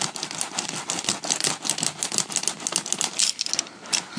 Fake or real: real